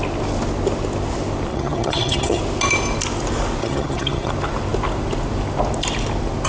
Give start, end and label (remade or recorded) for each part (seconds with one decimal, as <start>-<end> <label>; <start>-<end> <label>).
0.0-1.5 recorded; 1.5-2.4 remade; 2.4-3.6 recorded; 3.6-4.3 remade; 4.3-6.5 recorded

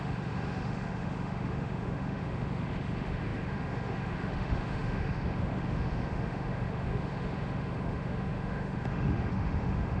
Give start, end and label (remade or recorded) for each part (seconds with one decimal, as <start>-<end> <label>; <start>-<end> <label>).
0.0-10.0 remade

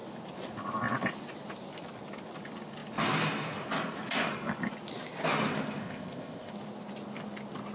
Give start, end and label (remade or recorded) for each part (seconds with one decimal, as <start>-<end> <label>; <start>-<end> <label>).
0.0-5.8 recorded; 5.8-6.5 remade; 6.5-7.7 recorded

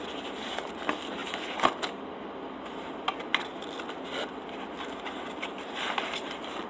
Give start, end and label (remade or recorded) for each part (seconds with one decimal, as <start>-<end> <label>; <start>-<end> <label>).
0.0-6.7 recorded

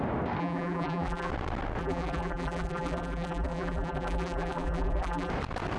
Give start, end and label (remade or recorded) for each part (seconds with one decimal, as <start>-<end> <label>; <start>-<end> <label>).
0.0-0.4 recorded; 0.4-1.3 remade; 1.3-1.8 recorded; 1.8-5.3 remade; 5.3-5.8 recorded

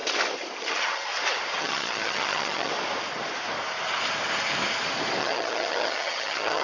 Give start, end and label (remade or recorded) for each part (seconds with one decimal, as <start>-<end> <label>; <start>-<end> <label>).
0.0-0.6 recorded; 0.6-1.1 remade; 1.1-1.6 recorded; 1.6-2.7 remade; 2.7-5.2 recorded; 5.2-6.6 remade